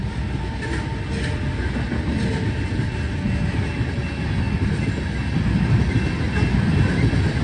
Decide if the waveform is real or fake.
real